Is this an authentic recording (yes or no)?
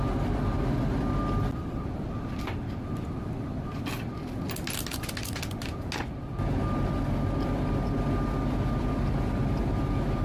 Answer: yes